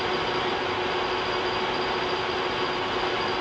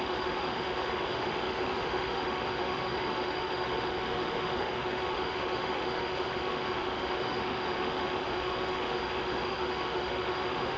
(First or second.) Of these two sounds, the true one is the first